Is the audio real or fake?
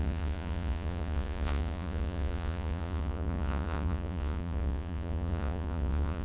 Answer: fake